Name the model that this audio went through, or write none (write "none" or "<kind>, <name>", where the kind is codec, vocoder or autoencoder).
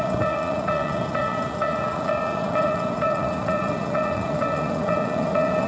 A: vocoder, Vocos